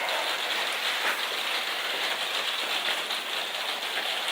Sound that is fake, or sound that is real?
real